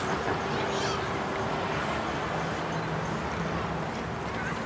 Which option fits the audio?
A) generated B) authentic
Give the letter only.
B